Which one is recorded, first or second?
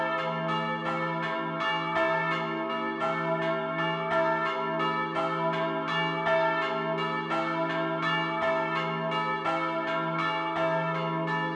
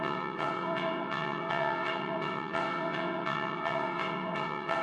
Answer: first